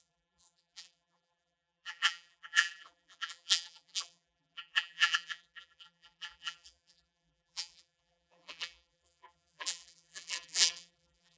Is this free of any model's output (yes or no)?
no